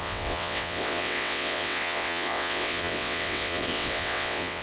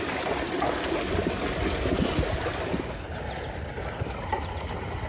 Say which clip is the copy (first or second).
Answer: first